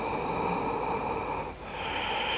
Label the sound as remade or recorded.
recorded